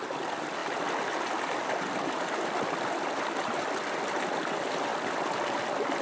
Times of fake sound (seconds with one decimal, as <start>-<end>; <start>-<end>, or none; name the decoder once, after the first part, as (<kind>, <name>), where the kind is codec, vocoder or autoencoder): none